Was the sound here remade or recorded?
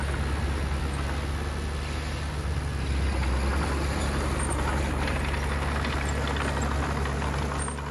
recorded